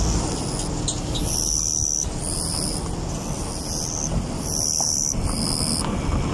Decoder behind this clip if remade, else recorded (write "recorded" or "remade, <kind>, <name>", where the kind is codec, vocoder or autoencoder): recorded